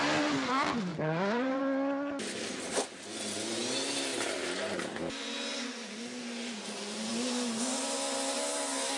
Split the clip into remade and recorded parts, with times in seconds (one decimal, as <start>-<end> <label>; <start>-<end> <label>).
0.0-0.9 recorded; 0.9-1.6 remade; 1.6-9.0 recorded

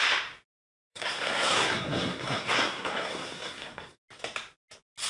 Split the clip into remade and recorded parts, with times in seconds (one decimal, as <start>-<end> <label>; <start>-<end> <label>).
0.0-0.9 recorded; 0.9-4.0 remade; 4.0-5.1 recorded

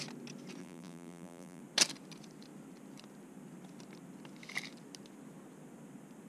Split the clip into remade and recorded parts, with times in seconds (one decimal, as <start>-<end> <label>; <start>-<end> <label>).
0.0-0.6 recorded; 0.6-1.6 remade; 1.6-6.3 recorded

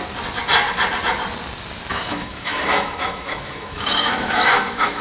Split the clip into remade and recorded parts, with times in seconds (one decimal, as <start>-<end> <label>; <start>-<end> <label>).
0.0-1.9 recorded; 1.9-5.0 remade

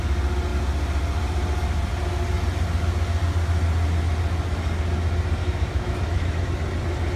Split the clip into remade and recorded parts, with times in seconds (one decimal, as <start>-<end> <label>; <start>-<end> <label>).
0.0-5.4 recorded; 5.4-6.5 remade; 6.5-7.2 recorded

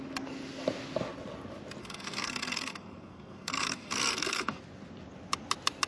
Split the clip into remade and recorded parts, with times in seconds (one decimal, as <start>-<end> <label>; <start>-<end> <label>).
0.0-1.8 recorded; 1.8-4.6 remade; 4.6-5.9 recorded

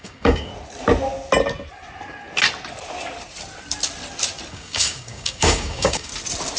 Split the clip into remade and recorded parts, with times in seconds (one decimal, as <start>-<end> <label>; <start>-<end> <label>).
0.0-0.5 remade; 0.5-4.5 recorded; 4.5-6.1 remade; 6.1-6.6 recorded

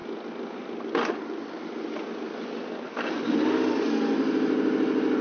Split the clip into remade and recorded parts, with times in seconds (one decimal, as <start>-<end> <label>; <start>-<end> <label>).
0.0-5.2 recorded